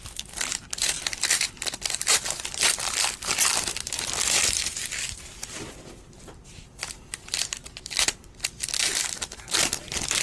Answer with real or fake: fake